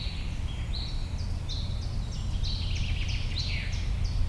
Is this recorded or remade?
recorded